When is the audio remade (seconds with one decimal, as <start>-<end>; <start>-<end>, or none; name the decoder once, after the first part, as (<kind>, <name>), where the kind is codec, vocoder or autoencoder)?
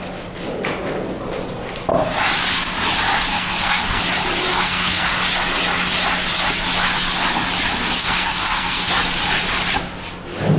3.3-4.0 (codec, SNAC); 4.5-5.1; 8.0-8.9